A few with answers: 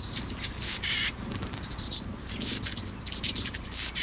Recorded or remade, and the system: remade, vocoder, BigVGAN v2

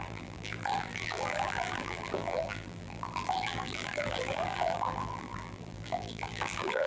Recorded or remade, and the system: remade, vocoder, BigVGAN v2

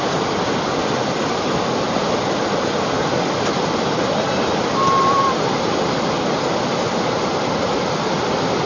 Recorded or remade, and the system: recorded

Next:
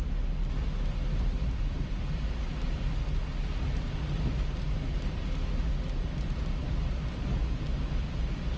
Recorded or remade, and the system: recorded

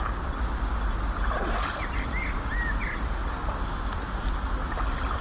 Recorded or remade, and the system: recorded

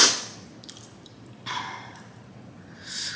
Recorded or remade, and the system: remade, vocoder, BigVGAN v2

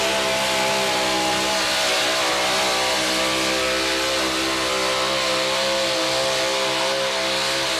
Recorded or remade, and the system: recorded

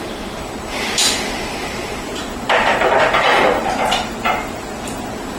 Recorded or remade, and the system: remade, vocoder, BigVGAN v2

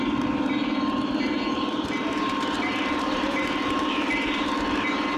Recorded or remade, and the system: remade, vocoder, BigVGAN v2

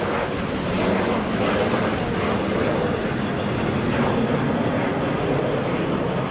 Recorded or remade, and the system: recorded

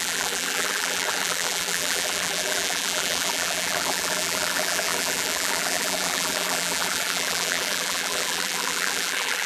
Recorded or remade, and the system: remade, vocoder, BigVGAN v2